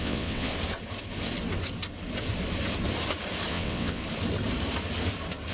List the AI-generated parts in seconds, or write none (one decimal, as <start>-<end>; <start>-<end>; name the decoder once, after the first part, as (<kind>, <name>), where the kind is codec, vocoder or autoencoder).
0.0-0.5 (vocoder, WaveNeXt); 3.5-4.0